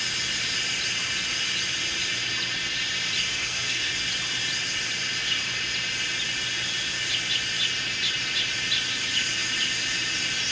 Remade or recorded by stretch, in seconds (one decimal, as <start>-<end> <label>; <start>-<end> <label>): 0.0-3.3 recorded; 3.3-3.9 remade; 3.9-10.5 recorded